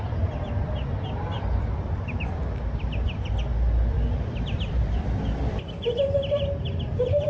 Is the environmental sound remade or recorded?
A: remade